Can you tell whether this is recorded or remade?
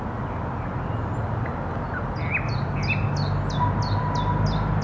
recorded